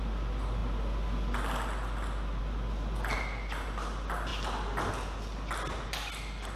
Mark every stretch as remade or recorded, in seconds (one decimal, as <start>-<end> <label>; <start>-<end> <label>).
0.0-6.6 recorded